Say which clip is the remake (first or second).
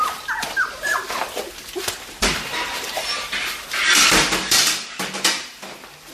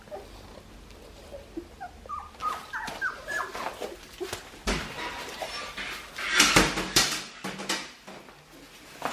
first